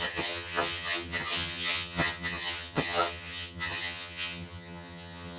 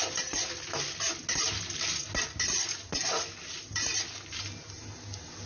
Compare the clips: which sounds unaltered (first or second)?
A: second